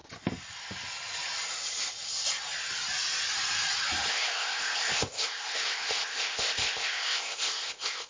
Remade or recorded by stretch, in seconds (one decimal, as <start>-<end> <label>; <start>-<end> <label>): 0.0-4.1 recorded; 4.1-8.1 remade